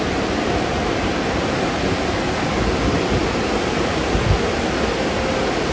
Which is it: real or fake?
real